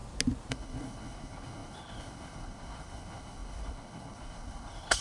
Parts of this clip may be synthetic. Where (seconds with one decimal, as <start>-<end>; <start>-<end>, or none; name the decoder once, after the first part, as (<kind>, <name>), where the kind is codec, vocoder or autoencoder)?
0.5-5.0 (codec, HILCodec)